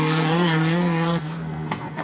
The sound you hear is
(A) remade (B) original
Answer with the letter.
A